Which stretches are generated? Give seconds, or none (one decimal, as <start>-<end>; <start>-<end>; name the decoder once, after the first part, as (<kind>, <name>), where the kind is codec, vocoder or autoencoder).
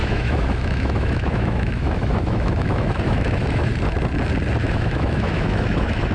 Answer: 0.0-3.7 (autoencoder, DAC-VAE); 4.6-6.1